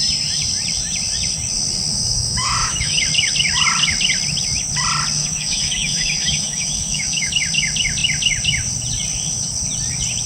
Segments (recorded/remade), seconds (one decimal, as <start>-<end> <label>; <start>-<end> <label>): 0.0-1.9 recorded; 1.9-3.0 remade; 3.0-5.2 recorded; 5.2-7.3 remade; 7.3-10.3 recorded